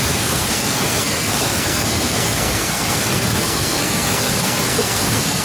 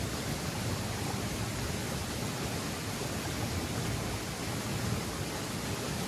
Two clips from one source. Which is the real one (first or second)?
second